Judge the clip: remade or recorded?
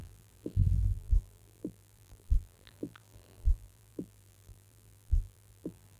remade